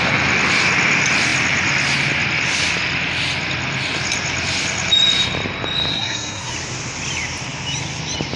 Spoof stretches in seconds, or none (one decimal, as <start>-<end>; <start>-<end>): 5.9-6.5